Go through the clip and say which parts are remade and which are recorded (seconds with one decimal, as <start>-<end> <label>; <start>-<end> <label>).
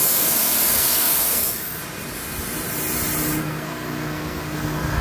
0.0-1.8 remade; 1.8-3.4 recorded; 3.4-5.0 remade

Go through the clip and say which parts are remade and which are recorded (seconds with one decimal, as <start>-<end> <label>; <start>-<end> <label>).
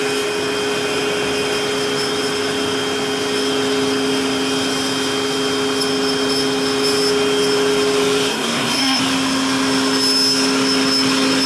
0.0-8.3 recorded; 8.3-9.0 remade; 9.0-11.5 recorded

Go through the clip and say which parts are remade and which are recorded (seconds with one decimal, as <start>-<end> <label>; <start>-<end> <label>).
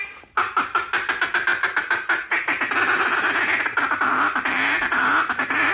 0.0-5.7 recorded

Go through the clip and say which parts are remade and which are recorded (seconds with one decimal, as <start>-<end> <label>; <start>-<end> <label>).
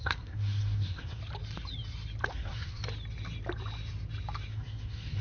0.0-1.2 remade; 1.2-2.3 recorded; 2.3-2.8 remade; 2.8-4.5 recorded; 4.5-5.2 remade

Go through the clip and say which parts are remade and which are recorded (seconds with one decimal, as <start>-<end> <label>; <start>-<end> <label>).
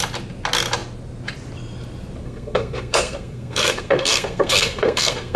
0.0-2.2 recorded; 2.2-5.4 remade